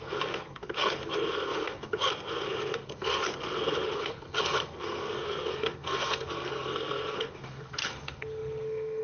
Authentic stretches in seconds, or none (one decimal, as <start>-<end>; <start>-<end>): none